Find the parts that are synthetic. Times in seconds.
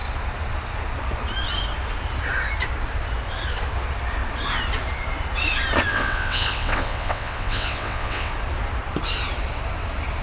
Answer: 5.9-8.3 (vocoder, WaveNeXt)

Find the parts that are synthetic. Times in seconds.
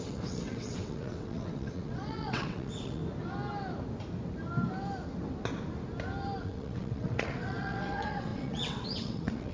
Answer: 0.0-3.0 (vocoder, WaveNeXt); 6.4-9.5